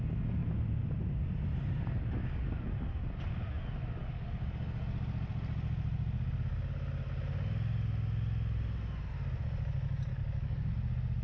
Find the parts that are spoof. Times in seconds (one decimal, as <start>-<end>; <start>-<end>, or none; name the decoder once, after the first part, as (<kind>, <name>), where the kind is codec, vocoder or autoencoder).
4.0-4.8 (codec, DAC); 10.1-10.7